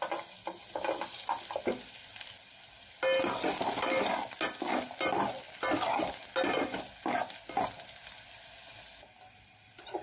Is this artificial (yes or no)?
no